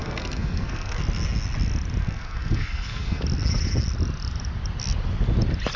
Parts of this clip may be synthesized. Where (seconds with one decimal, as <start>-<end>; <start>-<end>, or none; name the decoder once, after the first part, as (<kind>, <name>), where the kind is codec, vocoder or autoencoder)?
0.0-1.0 (codec, SNAC); 2.0-3.2

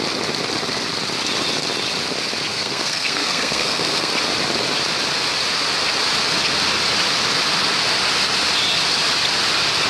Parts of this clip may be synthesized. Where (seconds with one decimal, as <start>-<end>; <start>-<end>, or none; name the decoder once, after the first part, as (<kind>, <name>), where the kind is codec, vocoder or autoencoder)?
2.5-4.1 (codec, SNAC)